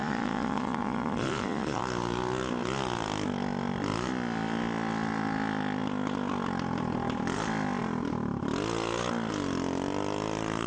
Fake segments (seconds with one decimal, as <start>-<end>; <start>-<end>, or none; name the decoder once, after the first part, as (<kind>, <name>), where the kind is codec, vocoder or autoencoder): 0.0-1.8 (vocoder, Vocos)